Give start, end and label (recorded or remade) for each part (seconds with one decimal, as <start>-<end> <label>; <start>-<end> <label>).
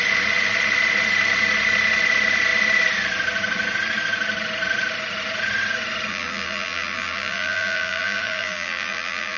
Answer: 0.0-6.1 recorded; 6.1-9.4 remade